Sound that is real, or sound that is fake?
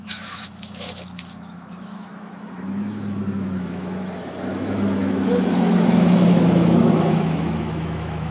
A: fake